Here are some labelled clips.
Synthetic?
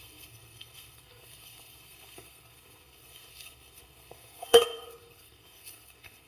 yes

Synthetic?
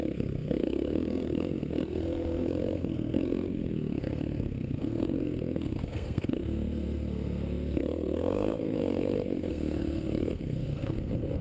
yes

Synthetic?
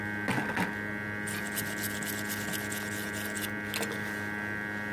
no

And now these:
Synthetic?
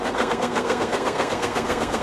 yes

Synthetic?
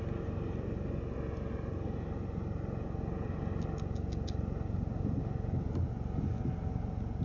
no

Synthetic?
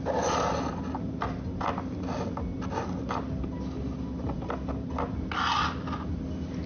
no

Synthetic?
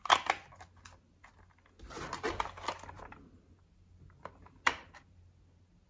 no